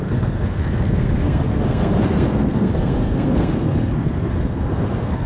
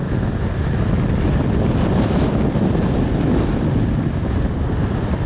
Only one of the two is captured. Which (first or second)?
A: second